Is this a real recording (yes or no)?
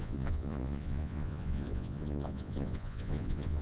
no